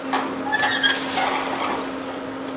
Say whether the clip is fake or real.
real